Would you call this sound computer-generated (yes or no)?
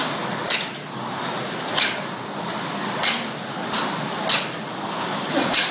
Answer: no